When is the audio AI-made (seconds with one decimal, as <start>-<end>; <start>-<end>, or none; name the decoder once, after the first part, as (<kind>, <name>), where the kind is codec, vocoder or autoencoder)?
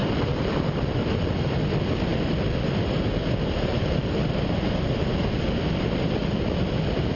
0.0-0.5 (vocoder, BigVGAN v2); 3.7-4.9